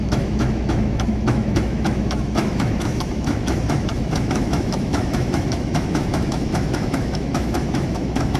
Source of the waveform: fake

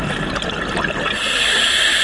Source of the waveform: real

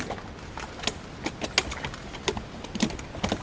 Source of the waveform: real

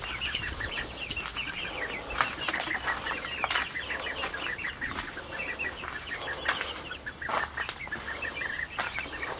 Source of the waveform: real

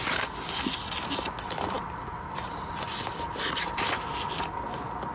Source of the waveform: real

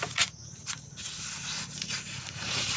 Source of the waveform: fake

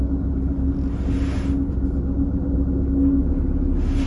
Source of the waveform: real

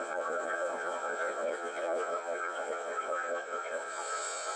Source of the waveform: fake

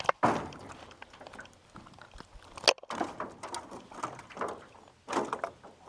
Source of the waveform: real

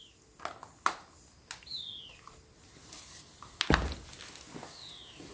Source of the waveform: real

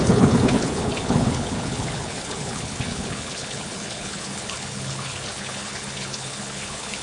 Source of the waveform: fake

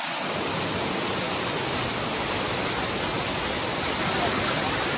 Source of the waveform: real